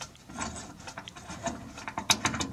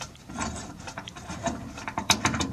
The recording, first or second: first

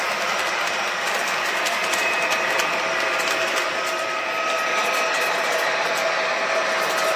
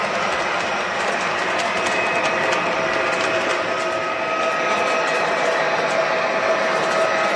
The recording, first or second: second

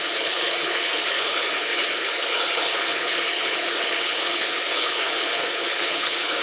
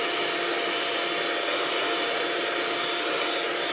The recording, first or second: second